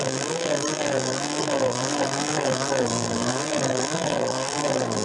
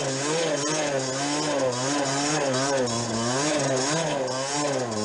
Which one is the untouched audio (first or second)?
second